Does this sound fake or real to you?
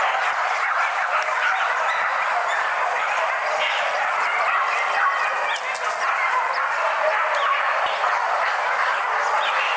real